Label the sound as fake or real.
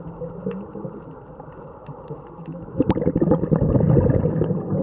real